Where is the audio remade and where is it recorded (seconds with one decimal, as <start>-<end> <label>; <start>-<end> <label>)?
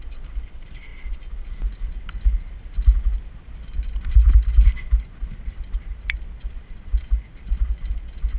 0.0-5.9 recorded; 5.9-7.0 remade; 7.0-8.4 recorded